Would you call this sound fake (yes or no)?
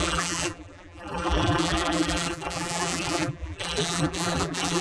yes